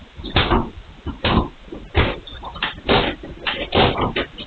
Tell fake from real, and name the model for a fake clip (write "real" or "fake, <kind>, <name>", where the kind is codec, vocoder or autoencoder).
real